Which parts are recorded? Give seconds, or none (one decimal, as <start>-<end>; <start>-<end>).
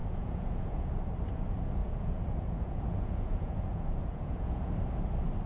0.9-1.8; 4.7-5.5